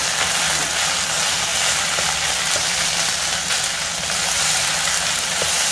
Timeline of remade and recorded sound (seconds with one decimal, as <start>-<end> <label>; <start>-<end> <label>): 0.0-5.7 recorded